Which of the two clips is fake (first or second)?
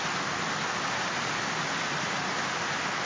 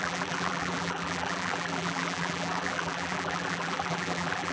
second